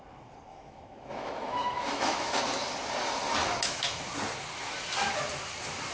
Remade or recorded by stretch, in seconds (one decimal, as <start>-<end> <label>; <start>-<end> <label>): 0.0-0.5 recorded; 0.5-2.4 remade; 2.4-3.4 recorded; 3.4-4.0 remade; 4.0-5.9 recorded